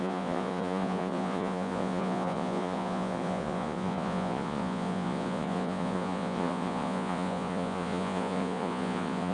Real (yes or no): no